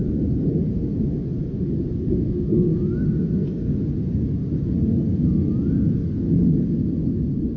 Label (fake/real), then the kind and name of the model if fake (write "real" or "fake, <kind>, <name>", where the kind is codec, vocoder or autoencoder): real